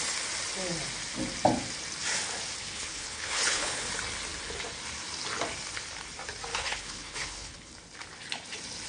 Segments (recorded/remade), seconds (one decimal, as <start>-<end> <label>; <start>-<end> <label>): 0.0-2.6 recorded; 2.6-3.9 remade; 3.9-6.5 recorded; 6.5-7.7 remade; 7.7-8.9 recorded